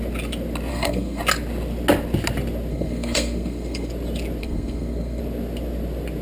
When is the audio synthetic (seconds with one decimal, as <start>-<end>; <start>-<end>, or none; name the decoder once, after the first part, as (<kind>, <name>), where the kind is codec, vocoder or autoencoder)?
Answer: 0.7-1.2 (codec, SNAC); 2.7-3.9; 4.4-5.2